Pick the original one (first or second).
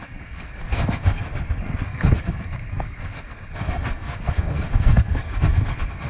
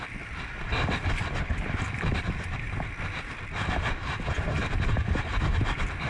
second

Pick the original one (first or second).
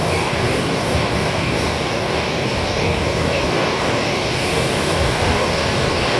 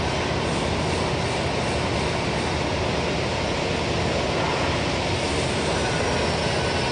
second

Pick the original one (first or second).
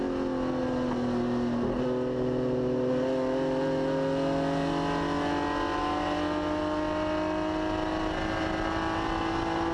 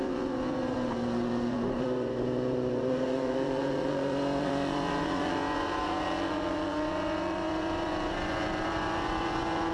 first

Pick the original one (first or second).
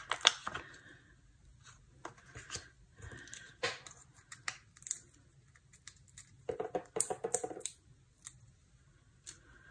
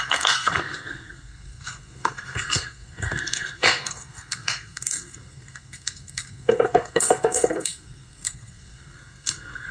first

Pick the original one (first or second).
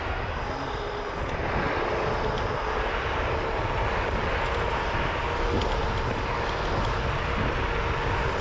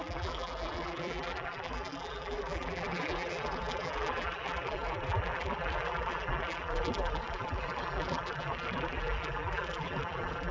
first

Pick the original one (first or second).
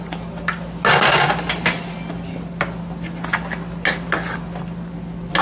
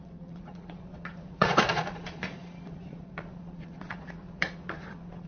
first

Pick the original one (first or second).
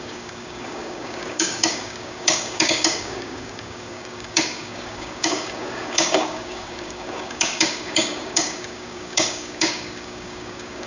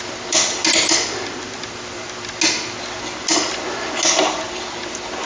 second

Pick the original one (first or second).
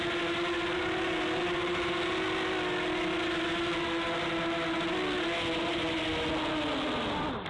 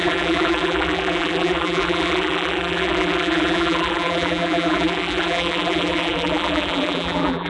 first